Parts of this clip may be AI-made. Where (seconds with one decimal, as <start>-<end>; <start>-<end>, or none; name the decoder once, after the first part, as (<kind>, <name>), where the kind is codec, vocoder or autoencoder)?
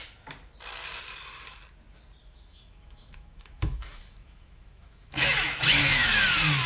2.2-6.2 (autoencoder, DAC-VAE)